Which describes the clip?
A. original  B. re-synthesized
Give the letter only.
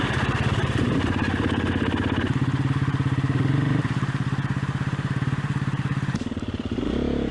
B